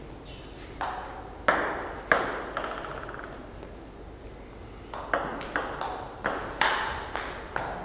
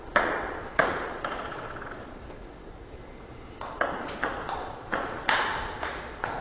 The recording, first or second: first